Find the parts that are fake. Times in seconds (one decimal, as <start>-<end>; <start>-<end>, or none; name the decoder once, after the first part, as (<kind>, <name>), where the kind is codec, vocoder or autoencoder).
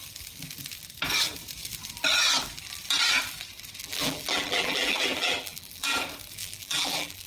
3.8-6.0 (vocoder, BigVGAN v2); 6.4-7.3